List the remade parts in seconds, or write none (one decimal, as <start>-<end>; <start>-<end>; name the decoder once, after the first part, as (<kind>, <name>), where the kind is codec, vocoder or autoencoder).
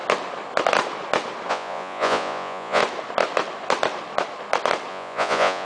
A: 1.5-2.8 (vocoder, Vocos); 4.9-5.6